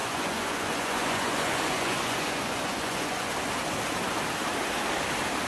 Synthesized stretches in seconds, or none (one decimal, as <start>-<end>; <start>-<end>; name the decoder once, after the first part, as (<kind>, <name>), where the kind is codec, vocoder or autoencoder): 0.0-3.3 (vocoder, Vocos)